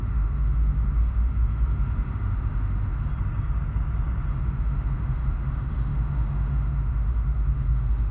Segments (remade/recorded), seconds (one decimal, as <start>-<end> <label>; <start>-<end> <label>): 0.0-3.1 remade; 3.1-4.3 recorded; 4.3-8.1 remade